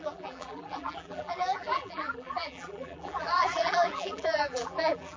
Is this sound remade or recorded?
remade